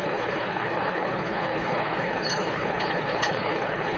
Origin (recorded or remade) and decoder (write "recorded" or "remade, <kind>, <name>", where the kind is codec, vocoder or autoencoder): remade, codec, HILCodec